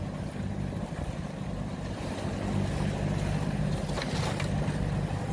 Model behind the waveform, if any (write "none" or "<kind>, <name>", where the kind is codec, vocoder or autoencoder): none